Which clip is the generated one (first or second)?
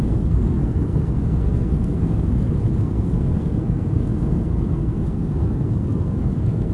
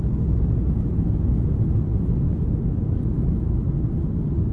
first